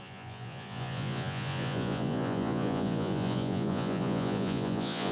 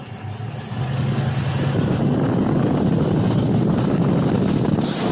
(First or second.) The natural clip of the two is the second